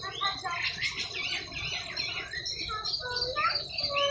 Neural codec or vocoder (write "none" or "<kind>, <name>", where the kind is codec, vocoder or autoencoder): none